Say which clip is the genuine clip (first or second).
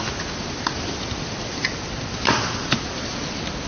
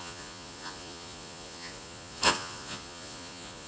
first